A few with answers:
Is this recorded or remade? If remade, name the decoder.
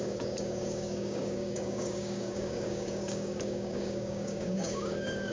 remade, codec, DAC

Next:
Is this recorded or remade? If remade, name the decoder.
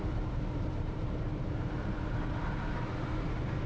remade, vocoder, BigVGAN v2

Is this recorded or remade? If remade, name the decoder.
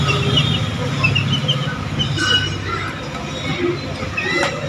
recorded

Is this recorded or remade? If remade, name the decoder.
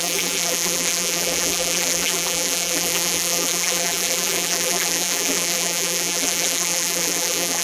remade, vocoder, BigVGAN v2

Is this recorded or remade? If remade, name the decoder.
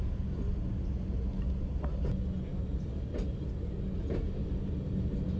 recorded